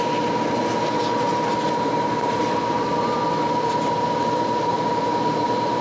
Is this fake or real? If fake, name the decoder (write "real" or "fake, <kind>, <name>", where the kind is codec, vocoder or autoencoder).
real